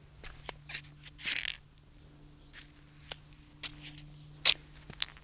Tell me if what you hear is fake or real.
real